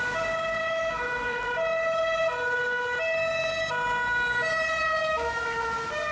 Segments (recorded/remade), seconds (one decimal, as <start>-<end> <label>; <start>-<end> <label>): 0.0-0.6 recorded; 0.6-1.4 remade; 1.4-5.0 recorded; 5.0-5.6 remade; 5.6-6.1 recorded